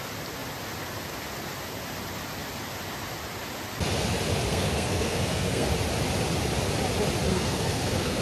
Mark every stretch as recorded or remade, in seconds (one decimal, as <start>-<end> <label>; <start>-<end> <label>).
0.0-4.5 recorded; 4.5-5.7 remade; 5.7-7.3 recorded; 7.3-8.2 remade